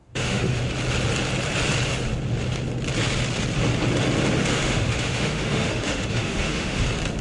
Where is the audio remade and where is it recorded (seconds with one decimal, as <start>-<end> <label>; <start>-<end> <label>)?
0.0-0.6 remade; 0.6-4.5 recorded; 4.5-6.8 remade; 6.8-7.2 recorded